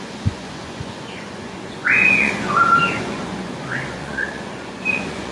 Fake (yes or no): yes